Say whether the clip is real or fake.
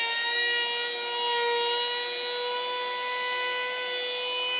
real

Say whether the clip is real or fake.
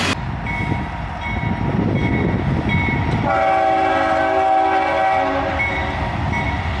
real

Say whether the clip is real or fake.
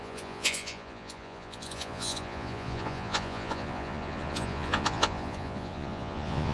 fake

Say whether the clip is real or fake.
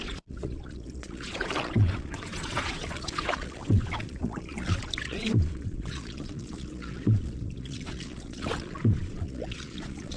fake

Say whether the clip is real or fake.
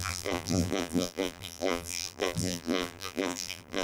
fake